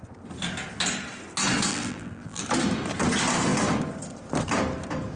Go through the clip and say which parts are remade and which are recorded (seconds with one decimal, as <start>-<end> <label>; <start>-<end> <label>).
0.0-1.7 recorded; 1.7-2.4 remade; 2.4-5.2 recorded